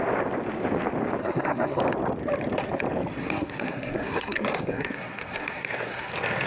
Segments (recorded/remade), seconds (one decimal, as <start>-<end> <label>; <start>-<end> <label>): 0.0-1.2 recorded; 1.2-1.8 remade; 1.8-3.2 recorded; 3.2-6.1 remade; 6.1-6.5 recorded